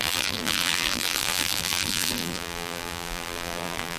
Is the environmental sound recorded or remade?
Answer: remade